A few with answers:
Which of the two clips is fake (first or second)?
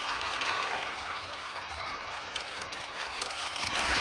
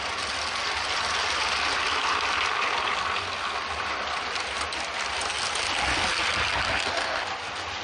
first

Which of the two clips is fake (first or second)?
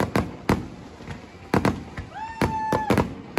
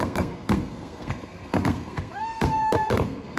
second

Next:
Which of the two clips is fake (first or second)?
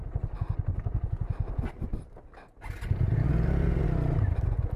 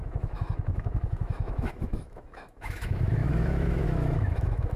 second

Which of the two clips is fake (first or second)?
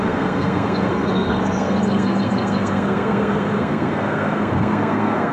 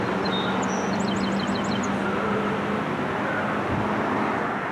first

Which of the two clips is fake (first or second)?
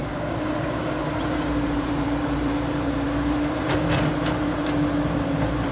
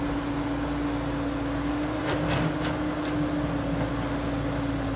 first